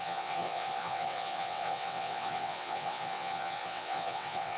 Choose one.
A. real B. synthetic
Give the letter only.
B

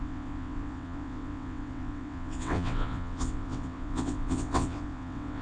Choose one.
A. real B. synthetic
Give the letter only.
B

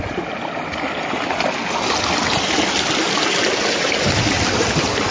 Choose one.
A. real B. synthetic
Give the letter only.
A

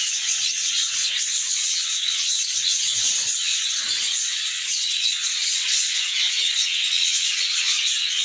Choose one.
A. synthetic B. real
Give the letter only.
A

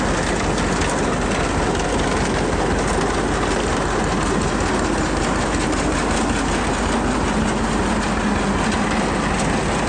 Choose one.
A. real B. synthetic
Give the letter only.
A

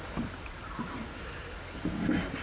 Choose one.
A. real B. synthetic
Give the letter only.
A